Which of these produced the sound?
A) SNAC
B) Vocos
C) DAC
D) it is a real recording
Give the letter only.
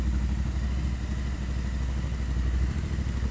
D